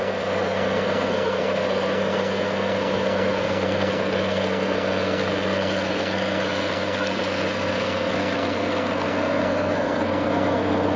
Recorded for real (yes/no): no